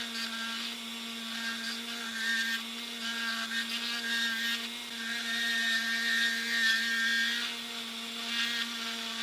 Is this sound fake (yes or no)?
no